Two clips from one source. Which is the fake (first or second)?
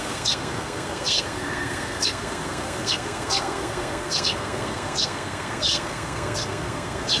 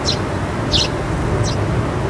first